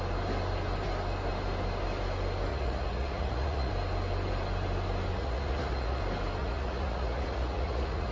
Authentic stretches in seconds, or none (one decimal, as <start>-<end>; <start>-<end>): 0.0-2.5; 3.7-5.1; 6.0-6.4

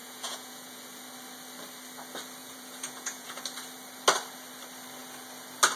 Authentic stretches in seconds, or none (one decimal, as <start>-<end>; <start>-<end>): 0.8-2.4; 3.4-5.8

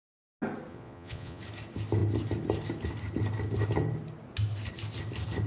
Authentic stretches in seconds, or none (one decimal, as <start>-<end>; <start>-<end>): 0.0-0.7; 1.4-5.5